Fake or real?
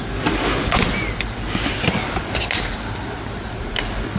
real